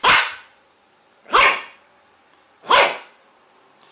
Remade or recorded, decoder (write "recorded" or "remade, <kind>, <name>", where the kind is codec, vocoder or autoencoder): remade, vocoder, BigVGAN v2